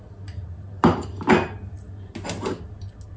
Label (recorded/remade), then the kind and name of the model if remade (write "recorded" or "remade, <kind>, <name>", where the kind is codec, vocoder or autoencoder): recorded